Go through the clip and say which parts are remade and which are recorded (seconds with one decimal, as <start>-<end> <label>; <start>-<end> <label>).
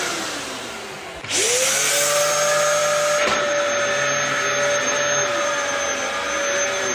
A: 0.0-6.9 recorded